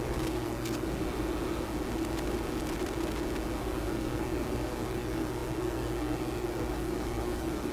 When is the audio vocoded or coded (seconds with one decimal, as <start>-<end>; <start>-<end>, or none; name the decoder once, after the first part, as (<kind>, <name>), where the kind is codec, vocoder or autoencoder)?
0.0-1.0 (codec, SNAC); 3.6-7.7